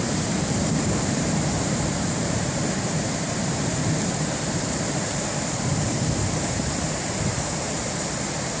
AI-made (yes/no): yes